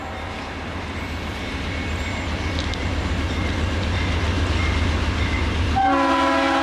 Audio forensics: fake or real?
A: real